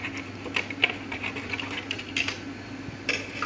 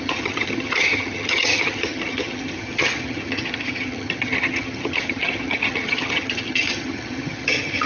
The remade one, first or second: second